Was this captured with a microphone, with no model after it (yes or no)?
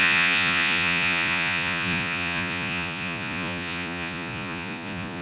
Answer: no